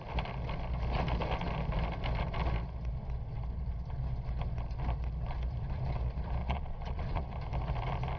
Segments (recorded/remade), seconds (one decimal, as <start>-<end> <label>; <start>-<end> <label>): 0.0-6.4 recorded; 6.4-7.3 remade; 7.3-8.2 recorded